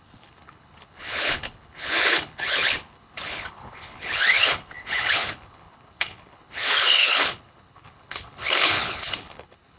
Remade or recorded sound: remade